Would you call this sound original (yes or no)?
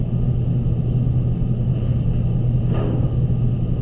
yes